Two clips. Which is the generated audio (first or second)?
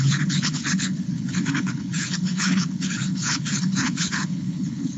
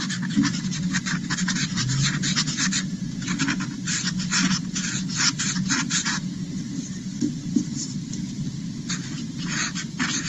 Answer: first